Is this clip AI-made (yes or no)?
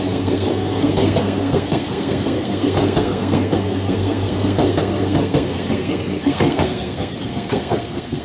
yes